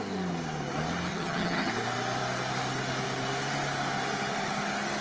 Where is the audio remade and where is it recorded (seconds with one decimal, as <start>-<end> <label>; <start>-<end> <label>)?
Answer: 0.0-1.1 recorded; 1.1-1.7 remade; 1.7-5.0 recorded